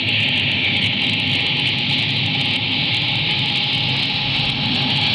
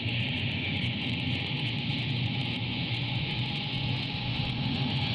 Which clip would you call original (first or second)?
first